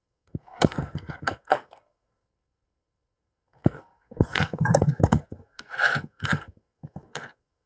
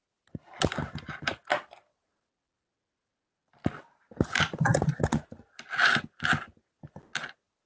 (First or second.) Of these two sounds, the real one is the second